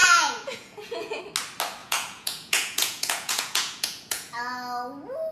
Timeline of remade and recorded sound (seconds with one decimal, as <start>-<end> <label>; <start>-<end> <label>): 0.0-1.2 remade; 1.2-1.8 recorded; 1.8-4.4 remade; 4.4-5.3 recorded